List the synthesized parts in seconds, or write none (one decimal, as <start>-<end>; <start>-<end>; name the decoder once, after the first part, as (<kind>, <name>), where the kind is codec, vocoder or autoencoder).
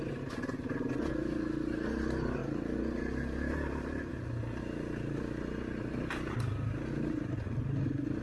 none